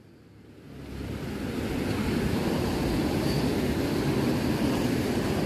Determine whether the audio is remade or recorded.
recorded